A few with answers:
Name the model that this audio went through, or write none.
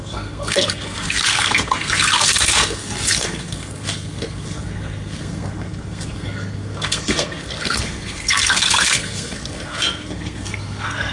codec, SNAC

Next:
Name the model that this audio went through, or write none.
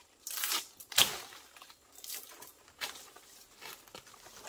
none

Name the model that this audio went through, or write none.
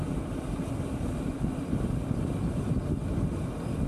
none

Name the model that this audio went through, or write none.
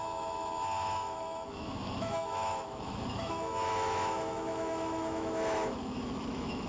autoencoder, DAC-VAE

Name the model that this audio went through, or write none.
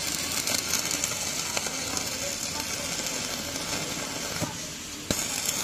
none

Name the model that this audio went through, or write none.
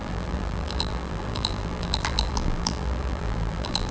vocoder, BigVGAN v2